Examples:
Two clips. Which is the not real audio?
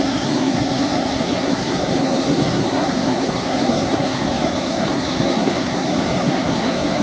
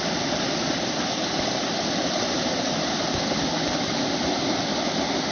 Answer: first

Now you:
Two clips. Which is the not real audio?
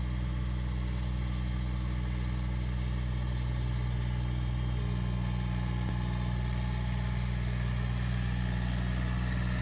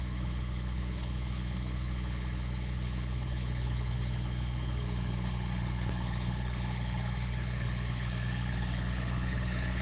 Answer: second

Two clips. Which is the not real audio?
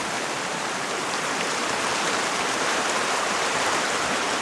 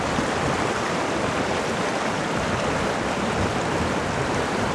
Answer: first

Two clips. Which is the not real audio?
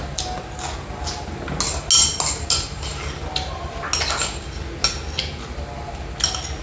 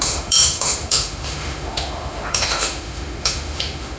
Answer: second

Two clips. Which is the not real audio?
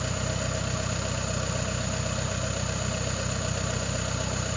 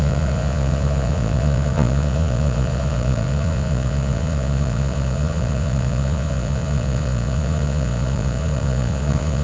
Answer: second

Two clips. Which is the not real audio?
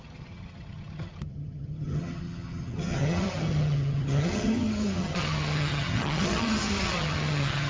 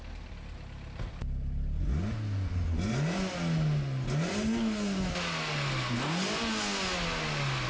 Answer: first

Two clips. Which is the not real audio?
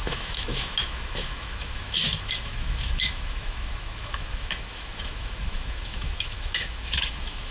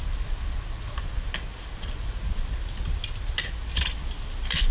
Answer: first